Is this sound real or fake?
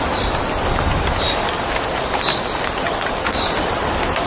real